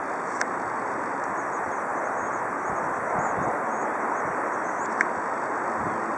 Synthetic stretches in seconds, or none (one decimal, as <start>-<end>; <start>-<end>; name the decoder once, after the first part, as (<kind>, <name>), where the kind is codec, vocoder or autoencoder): none